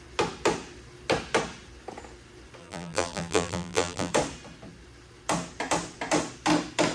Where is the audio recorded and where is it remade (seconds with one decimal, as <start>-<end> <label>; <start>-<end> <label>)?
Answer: 0.0-2.6 recorded; 2.6-4.1 remade; 4.1-6.9 recorded